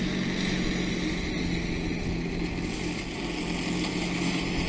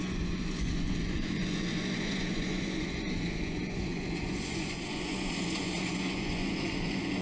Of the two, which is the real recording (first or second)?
first